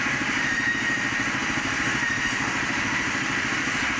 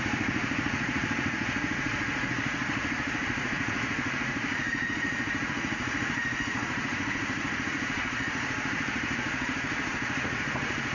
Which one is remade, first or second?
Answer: second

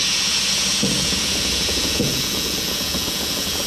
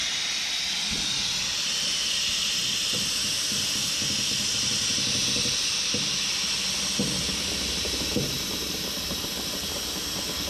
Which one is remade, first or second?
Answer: first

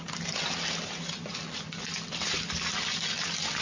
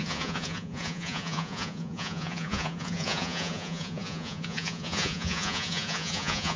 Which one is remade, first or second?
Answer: second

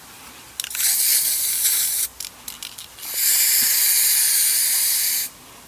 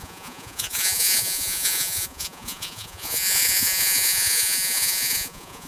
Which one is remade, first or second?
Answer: second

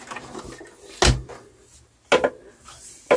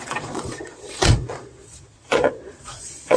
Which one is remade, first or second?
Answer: second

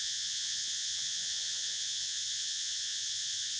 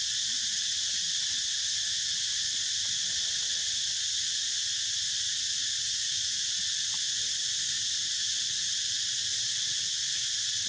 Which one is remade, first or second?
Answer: first